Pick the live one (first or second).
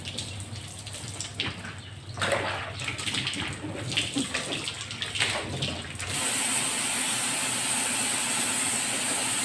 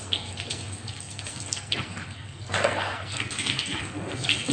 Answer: first